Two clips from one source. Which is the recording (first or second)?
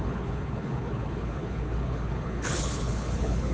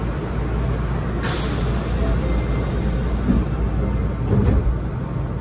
second